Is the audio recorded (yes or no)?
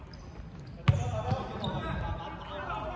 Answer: yes